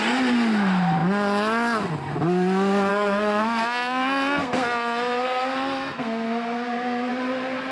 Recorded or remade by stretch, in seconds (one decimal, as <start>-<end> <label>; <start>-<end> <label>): 0.0-2.9 recorded; 2.9-7.1 remade; 7.1-7.7 recorded